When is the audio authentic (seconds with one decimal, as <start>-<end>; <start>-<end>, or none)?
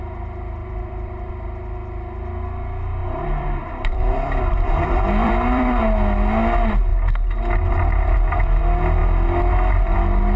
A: 0.0-0.6; 1.3-3.0; 5.8-10.4